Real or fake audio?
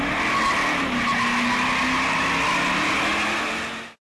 real